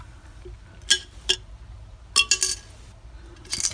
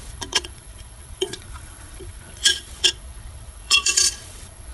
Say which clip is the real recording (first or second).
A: first